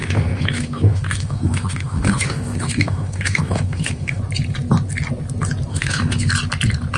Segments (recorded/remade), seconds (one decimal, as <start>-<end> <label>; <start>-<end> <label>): 0.0-4.2 remade; 4.2-5.7 recorded; 5.7-6.3 remade; 6.3-7.0 recorded